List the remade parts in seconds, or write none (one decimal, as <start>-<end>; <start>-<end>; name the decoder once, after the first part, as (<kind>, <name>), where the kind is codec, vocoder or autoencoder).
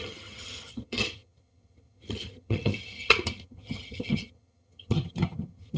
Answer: 0.0-5.8 (vocoder, HiFi-GAN)